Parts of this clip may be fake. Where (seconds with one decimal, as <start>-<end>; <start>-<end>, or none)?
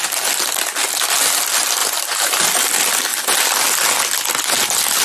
1.8-2.4